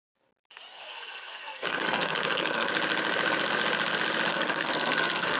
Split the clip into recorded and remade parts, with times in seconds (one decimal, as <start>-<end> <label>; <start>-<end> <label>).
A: 0.0-0.7 recorded; 0.7-2.7 remade; 2.7-4.3 recorded; 4.3-5.4 remade